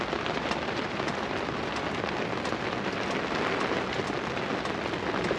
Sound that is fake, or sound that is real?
real